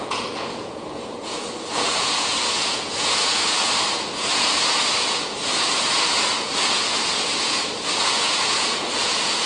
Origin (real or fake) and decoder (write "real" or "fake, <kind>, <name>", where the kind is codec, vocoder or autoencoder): fake, vocoder, Vocos